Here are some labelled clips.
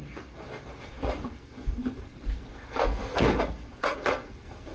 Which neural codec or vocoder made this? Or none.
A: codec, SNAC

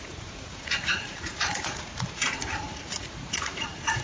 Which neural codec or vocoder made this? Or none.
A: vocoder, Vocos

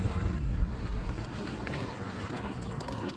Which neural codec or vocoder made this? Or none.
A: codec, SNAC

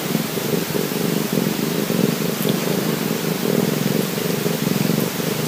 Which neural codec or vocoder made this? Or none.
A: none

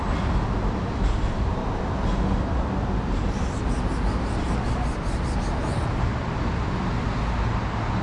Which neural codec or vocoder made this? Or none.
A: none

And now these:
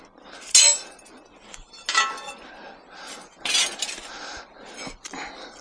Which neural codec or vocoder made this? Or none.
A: none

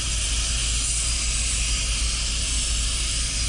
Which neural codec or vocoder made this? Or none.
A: none